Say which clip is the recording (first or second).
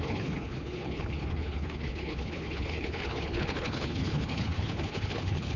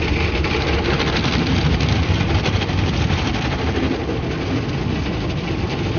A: second